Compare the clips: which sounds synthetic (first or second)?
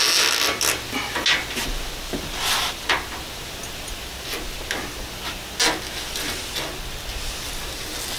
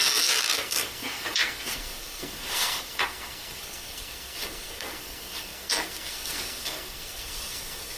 second